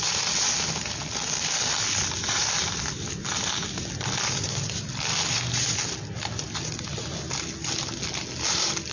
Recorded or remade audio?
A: recorded